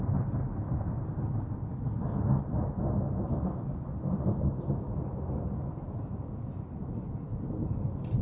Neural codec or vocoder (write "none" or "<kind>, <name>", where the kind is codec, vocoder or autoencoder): none